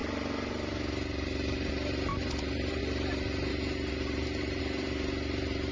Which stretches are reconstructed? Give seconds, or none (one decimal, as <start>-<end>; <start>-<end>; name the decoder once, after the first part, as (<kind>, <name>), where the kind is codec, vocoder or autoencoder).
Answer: 2.1-2.8 (vocoder, BigVGAN v2); 3.5-4.6